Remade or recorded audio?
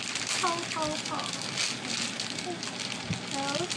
recorded